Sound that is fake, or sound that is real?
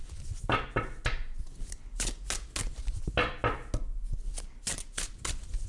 real